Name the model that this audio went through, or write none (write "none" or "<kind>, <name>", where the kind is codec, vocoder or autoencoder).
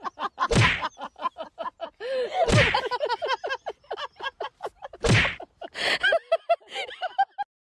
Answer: none